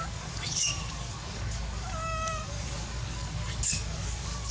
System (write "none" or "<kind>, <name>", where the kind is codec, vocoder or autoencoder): codec, DAC